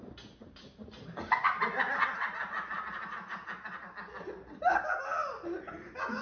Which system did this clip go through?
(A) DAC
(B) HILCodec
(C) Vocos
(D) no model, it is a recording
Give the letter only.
D